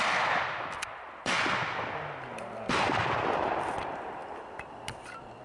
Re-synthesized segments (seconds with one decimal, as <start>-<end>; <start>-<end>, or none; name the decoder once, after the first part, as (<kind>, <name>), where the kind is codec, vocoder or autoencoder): none